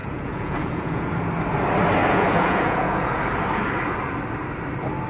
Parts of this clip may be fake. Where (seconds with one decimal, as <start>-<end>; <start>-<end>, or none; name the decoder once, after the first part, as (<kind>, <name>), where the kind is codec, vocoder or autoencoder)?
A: 0.0-1.1 (vocoder, Vocos); 2.0-3.2